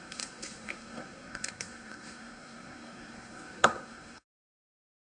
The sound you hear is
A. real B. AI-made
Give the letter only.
B